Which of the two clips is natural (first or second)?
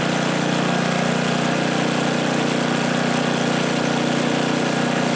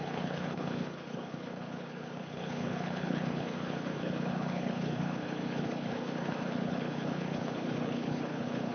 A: first